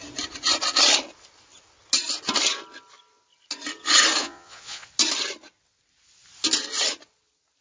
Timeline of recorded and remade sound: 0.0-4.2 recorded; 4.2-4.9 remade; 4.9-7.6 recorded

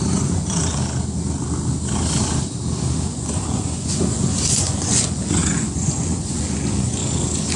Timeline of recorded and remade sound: 0.0-0.8 remade; 0.8-3.1 recorded; 3.1-7.0 remade; 7.0-7.6 recorded

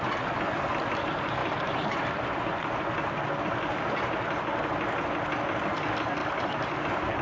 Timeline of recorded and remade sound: 0.0-7.2 recorded

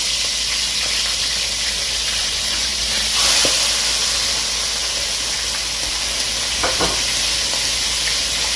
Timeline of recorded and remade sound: 0.0-2.2 recorded; 2.2-2.8 remade; 2.8-8.6 recorded

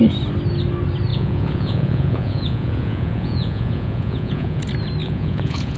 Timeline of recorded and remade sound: 0.0-1.1 recorded; 1.1-4.6 remade; 4.6-5.0 recorded; 5.0-5.8 remade

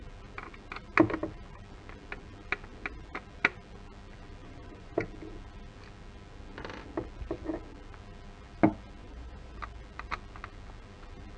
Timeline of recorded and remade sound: 0.0-4.4 recorded; 4.4-5.0 remade; 5.0-9.0 recorded; 9.0-9.5 remade; 9.5-11.4 recorded

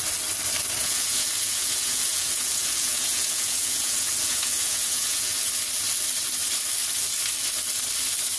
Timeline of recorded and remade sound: 0.0-0.8 recorded; 0.8-5.5 remade; 5.5-8.4 recorded

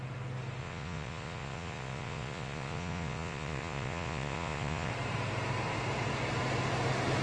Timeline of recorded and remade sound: 0.0-0.6 recorded; 0.6-4.9 remade; 4.9-7.2 recorded